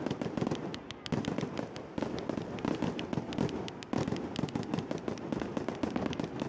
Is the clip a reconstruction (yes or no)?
no